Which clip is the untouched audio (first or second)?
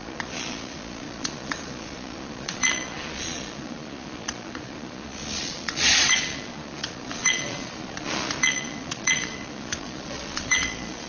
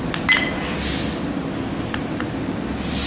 second